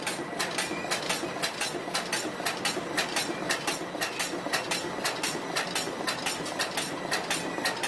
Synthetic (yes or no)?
no